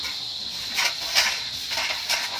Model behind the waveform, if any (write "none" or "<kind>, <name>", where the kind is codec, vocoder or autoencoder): vocoder, BigVGAN v2